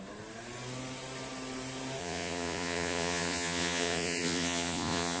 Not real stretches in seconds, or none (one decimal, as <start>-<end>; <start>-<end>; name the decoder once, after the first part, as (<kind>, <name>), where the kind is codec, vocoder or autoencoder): 2.0-5.2 (vocoder, Vocos)